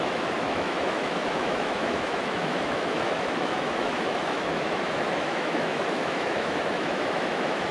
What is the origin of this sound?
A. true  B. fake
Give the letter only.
B